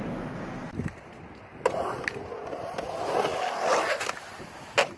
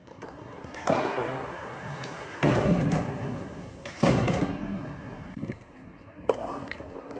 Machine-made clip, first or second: second